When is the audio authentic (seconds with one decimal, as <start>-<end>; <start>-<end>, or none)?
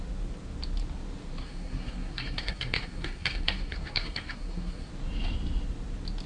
0.0-1.4; 4.9-6.3